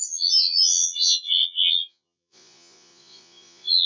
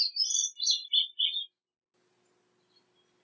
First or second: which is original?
second